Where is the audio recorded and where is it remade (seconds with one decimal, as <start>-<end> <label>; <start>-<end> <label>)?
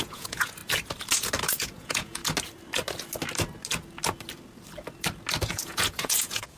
0.0-0.6 remade; 0.6-1.5 recorded; 1.5-2.2 remade; 2.2-5.4 recorded; 5.4-6.6 remade